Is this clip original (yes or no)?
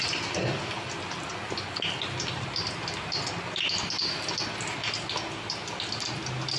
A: yes